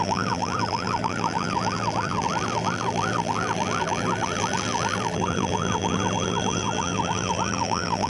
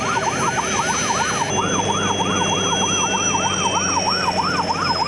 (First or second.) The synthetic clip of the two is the first